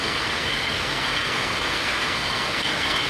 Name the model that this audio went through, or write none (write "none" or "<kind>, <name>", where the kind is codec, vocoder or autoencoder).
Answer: codec, SNAC